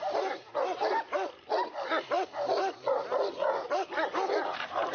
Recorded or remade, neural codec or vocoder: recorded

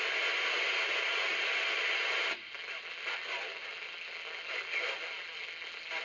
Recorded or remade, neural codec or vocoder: recorded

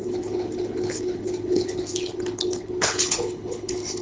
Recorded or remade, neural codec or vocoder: remade, codec, HILCodec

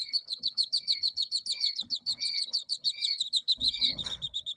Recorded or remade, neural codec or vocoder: remade, codec, HILCodec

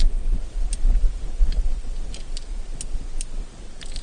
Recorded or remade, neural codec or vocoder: recorded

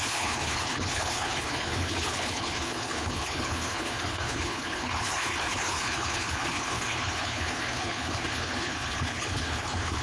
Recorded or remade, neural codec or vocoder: remade, codec, HILCodec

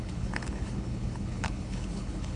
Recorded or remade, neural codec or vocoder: remade, codec, HILCodec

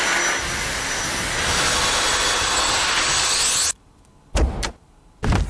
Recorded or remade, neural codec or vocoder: recorded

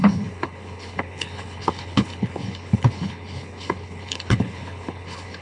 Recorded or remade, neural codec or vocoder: remade, codec, HILCodec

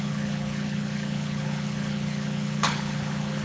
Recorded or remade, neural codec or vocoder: remade, codec, HILCodec